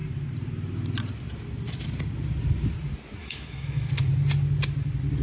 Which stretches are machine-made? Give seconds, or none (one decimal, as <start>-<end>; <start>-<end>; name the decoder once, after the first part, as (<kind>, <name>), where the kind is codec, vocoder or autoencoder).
3.2-3.9 (autoencoder, DAC-VAE)